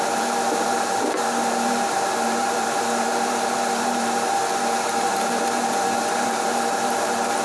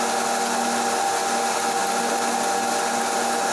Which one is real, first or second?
second